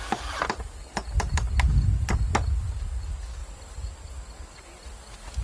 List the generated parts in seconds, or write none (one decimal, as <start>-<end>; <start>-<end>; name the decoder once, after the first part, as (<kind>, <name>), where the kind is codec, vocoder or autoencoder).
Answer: 3.4-3.9 (vocoder, BigVGAN v2)